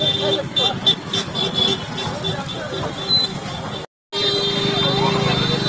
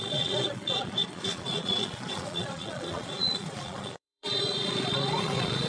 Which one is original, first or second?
first